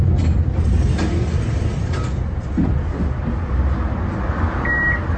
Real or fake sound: real